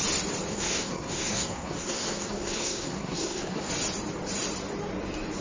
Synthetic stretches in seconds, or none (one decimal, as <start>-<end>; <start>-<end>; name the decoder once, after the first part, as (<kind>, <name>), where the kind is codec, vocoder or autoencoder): 0.5-3.7 (codec, SNAC)